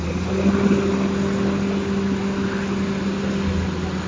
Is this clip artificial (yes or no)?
no